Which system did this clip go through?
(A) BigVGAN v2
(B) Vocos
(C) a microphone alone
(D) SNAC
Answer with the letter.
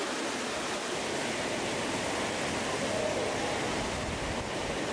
C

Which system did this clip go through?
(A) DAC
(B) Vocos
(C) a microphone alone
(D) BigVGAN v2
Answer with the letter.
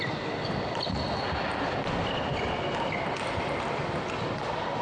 C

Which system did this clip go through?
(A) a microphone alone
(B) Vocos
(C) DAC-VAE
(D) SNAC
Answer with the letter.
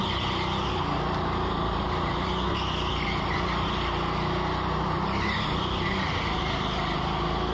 A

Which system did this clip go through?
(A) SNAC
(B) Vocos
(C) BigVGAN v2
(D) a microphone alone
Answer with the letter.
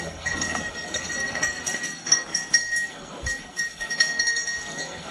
A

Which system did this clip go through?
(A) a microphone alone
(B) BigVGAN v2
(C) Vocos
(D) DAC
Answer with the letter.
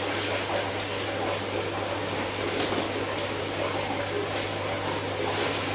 A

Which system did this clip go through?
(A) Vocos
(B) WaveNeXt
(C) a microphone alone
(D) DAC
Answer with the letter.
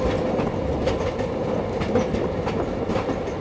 C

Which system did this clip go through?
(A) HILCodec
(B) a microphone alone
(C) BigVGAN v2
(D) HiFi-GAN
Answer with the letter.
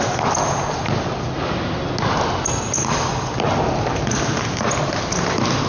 B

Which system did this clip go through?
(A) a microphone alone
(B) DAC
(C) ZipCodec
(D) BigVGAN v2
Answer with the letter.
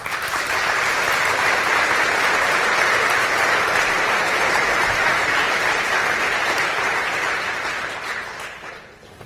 D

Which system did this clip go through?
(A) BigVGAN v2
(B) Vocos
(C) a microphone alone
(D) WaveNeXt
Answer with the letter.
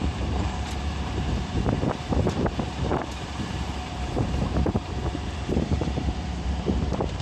A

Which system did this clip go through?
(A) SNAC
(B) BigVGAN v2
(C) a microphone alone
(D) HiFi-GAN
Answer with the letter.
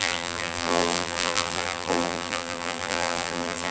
B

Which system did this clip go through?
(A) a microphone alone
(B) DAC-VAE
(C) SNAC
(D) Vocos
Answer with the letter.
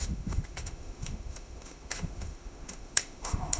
B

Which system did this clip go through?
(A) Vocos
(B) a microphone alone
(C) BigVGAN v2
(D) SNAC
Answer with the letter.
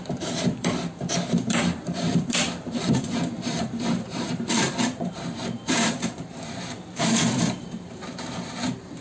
C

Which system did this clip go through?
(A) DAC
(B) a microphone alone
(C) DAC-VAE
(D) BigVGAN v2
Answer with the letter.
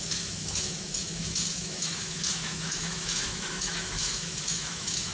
C